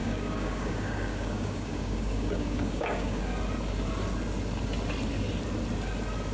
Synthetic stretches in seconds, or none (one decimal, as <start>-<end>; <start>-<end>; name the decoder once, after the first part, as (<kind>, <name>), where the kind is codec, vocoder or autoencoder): 0.0-3.2 (codec, DAC)